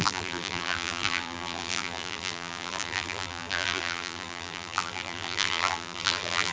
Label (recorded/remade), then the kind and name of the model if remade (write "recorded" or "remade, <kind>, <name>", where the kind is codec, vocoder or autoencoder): remade, vocoder, BigVGAN v2